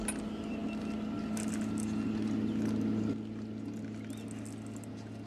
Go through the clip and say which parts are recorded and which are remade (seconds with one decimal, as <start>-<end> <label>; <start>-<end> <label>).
0.0-5.3 recorded